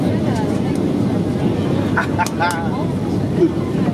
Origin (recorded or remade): recorded